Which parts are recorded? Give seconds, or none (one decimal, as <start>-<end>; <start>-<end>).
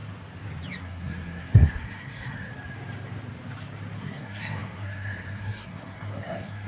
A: 0.0-0.8; 2.5-4.0